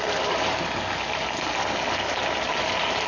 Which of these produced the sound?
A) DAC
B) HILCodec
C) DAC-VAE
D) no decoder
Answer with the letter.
D